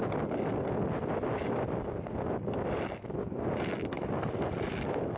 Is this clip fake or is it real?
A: real